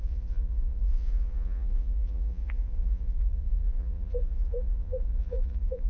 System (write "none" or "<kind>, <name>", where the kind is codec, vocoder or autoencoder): vocoder, Vocos